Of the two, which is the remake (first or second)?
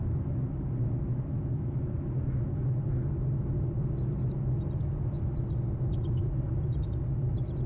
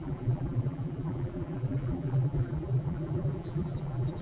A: second